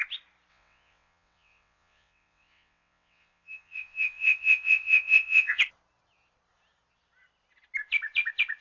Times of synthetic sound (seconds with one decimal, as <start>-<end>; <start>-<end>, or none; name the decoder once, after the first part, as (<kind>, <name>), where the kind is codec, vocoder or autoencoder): 0.5-5.6 (vocoder, WaveNeXt)